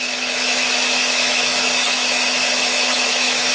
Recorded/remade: remade